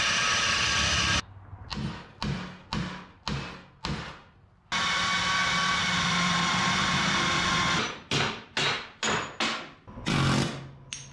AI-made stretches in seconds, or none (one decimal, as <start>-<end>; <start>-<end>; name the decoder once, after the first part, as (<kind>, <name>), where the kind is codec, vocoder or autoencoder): 5.4-6.9 (vocoder, BigVGAN v2)